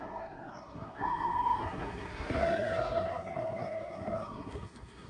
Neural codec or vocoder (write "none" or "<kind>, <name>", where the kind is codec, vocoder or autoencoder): codec, SNAC